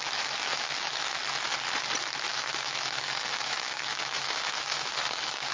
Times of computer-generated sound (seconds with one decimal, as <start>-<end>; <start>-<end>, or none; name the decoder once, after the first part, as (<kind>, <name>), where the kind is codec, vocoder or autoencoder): 0.0-1.2 (autoencoder, DAC-VAE); 2.3-5.5